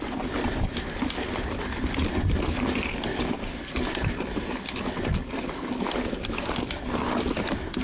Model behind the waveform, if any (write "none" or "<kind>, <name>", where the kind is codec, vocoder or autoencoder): none